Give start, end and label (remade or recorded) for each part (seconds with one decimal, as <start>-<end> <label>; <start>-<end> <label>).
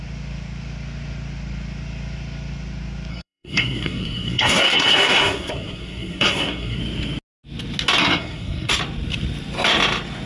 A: 0.0-3.1 recorded; 3.1-6.8 remade; 6.8-8.0 recorded; 8.0-8.7 remade; 8.7-10.3 recorded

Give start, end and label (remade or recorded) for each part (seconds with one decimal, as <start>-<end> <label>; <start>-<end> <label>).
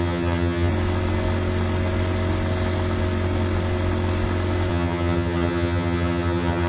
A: 0.0-0.7 remade; 0.7-4.7 recorded; 4.7-6.7 remade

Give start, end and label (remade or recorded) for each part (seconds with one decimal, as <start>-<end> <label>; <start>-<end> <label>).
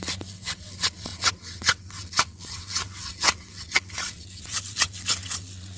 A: 0.0-5.8 remade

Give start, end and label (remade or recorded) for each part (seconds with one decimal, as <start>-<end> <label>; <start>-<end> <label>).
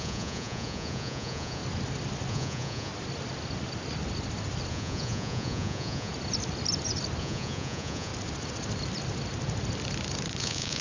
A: 0.0-1.6 remade; 1.6-2.3 recorded; 2.3-2.9 remade; 2.9-4.7 recorded; 4.7-6.1 remade; 6.1-7.2 recorded; 7.2-8.1 remade; 8.1-10.4 recorded; 10.4-10.8 remade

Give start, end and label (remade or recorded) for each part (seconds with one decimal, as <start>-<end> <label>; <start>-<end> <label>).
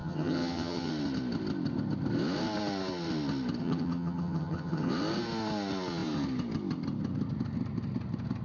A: 0.0-0.9 remade; 0.9-3.6 recorded; 3.6-4.9 remade; 4.9-8.4 recorded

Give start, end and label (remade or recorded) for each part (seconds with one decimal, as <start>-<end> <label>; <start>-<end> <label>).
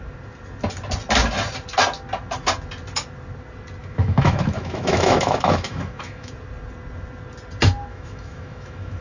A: 0.0-3.8 recorded; 3.8-6.3 remade; 6.3-7.9 recorded; 7.9-9.0 remade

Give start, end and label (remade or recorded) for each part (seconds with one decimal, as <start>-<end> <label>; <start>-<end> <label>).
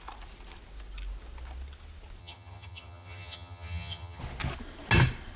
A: 0.0-2.2 recorded; 2.2-4.2 remade; 4.2-5.4 recorded